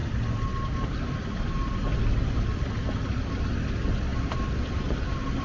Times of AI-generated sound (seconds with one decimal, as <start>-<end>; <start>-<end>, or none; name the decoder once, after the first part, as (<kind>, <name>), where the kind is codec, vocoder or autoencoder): 3.2-5.4 (vocoder, BigVGAN v2)